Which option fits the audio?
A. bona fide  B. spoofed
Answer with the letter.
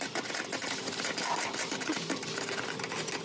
A